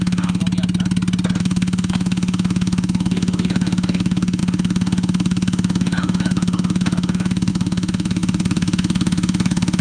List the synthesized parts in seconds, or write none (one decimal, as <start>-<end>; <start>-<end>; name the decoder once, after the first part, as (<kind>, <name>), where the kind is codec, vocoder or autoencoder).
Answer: 0.0-0.4 (autoencoder, DAC-VAE); 1.4-9.8